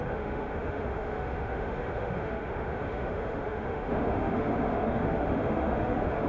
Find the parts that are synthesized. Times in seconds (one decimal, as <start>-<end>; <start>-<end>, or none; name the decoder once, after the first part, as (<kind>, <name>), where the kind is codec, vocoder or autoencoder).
0.0-6.3 (autoencoder, DAC-VAE)